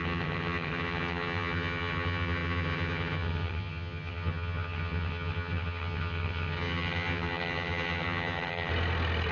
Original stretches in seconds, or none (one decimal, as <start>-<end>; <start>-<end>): 8.7-9.3